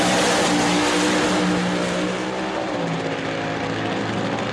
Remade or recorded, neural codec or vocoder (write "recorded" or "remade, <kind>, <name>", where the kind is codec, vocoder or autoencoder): recorded